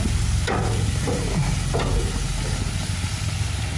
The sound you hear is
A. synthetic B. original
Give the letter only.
B